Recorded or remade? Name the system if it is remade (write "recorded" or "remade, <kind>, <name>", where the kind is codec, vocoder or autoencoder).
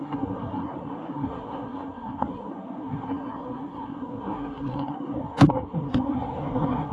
remade, codec, SNAC